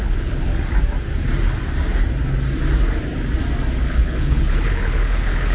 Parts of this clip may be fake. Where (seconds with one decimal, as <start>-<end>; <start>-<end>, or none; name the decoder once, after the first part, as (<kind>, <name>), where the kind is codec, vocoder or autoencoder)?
0.0-0.5 (codec, HILCodec); 3.8-5.5